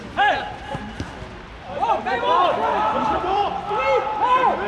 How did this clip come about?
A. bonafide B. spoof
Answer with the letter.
B